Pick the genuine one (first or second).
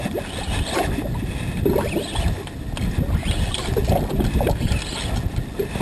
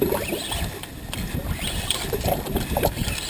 first